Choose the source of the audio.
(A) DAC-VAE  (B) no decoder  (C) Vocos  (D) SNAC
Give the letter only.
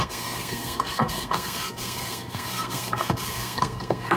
D